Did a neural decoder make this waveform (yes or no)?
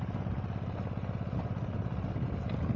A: no